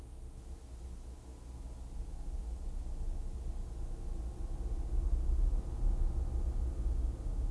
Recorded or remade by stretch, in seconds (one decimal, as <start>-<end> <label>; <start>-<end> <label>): 0.0-7.5 recorded